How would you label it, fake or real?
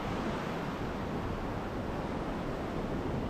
real